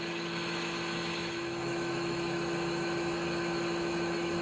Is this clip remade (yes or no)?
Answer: yes